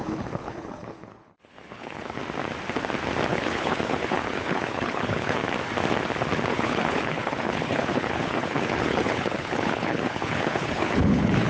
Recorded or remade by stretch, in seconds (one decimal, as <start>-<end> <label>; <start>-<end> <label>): 0.0-2.2 remade; 2.2-3.3 recorded; 3.3-5.4 remade; 5.4-6.5 recorded; 6.5-11.5 remade